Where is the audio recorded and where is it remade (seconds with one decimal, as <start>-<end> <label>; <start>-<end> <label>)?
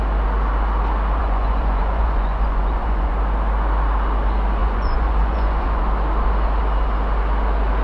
0.0-1.2 recorded; 1.2-3.1 remade; 3.1-4.6 recorded; 4.6-5.8 remade; 5.8-7.8 recorded